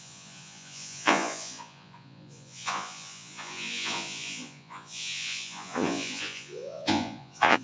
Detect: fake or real fake